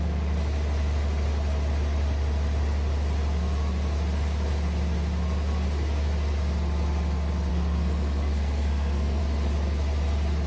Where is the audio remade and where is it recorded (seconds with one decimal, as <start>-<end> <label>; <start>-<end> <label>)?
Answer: 0.0-7.5 recorded; 7.5-9.2 remade; 9.2-10.5 recorded